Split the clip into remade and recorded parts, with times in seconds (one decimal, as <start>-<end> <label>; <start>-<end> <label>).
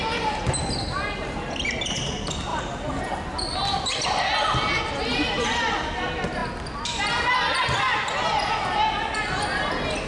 0.0-10.1 recorded